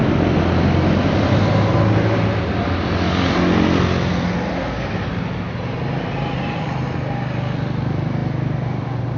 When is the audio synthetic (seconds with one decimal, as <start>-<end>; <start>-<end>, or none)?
4.5-5.1

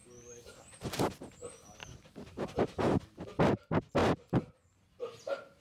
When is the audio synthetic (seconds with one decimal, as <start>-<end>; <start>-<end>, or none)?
0.0-1.0; 1.8-2.6

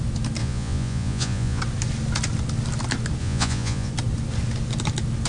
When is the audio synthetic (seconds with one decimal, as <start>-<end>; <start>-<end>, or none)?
0.4-1.6; 3.2-3.9

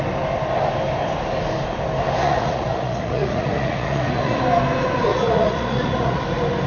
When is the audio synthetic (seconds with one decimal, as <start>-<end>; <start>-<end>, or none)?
2.2-4.4; 5.1-6.2

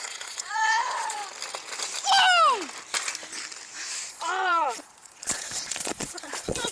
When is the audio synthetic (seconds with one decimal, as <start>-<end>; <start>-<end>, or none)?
0.0-1.2; 4.1-6.7

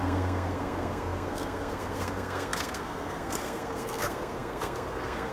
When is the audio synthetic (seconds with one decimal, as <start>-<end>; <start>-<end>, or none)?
0.0-5.3

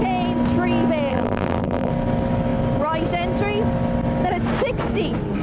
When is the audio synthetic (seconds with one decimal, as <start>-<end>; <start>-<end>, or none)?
1.1-1.9